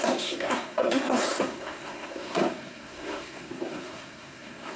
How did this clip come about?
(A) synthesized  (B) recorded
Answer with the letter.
A